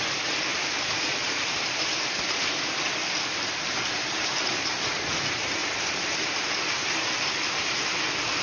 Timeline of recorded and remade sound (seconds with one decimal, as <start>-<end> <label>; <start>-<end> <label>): 0.0-0.5 recorded; 0.5-1.6 remade; 1.6-3.0 recorded; 3.0-3.8 remade; 3.8-5.6 recorded; 5.6-6.9 remade; 6.9-8.4 recorded